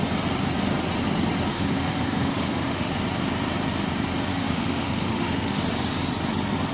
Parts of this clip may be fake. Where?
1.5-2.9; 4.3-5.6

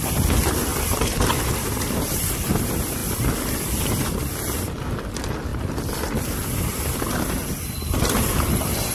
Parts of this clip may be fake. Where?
none